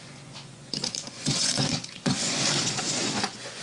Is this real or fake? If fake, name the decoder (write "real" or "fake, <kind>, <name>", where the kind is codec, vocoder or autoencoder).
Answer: fake, vocoder, Vocos